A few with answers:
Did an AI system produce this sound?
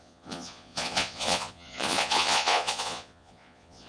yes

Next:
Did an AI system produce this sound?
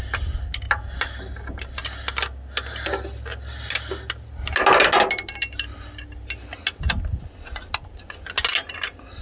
no